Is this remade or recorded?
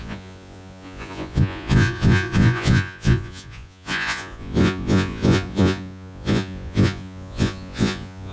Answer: remade